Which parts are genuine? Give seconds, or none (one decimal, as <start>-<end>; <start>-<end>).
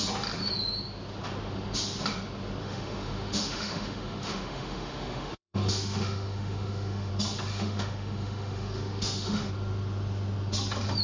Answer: 0.0-2.6; 7.1-7.5; 9.5-11.0